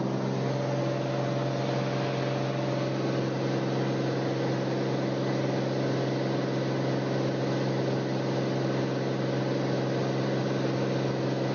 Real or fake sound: real